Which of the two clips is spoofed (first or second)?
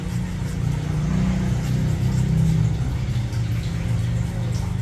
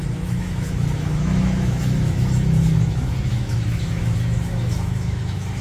second